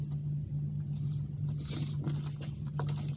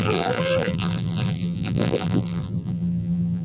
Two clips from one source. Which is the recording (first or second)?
first